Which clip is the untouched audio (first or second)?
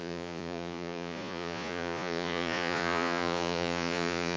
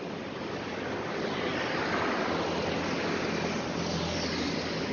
second